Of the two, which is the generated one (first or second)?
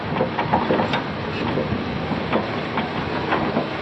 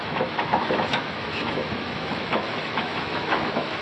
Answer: second